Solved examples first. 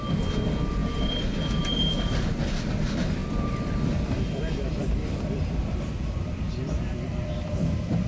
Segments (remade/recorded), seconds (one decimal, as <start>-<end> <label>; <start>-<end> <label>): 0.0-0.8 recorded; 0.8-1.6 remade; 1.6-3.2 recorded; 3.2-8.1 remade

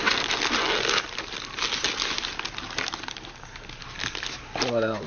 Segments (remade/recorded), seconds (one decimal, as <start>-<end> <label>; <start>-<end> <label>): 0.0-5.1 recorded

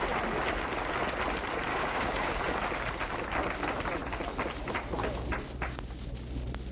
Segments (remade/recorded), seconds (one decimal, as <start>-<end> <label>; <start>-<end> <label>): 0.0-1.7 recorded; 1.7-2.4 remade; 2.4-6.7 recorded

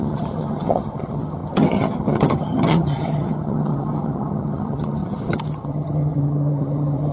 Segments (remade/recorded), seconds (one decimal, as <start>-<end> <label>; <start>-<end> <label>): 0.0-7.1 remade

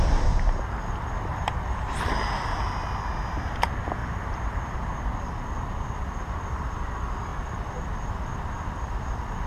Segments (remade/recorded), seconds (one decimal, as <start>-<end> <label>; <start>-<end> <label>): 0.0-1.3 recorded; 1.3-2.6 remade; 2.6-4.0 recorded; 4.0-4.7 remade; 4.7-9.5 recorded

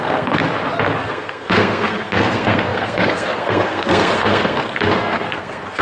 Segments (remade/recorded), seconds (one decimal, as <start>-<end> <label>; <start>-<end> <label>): 0.0-0.4 remade; 0.4-1.0 recorded; 1.0-5.8 remade